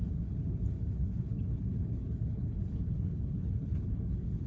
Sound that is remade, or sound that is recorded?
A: remade